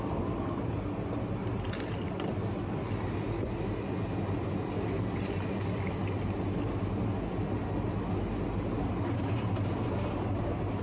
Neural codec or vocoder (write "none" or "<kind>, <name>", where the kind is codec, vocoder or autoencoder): none